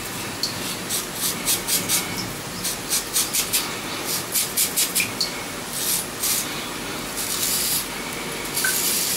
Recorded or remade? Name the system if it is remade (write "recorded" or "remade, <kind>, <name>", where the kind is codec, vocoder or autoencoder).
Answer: recorded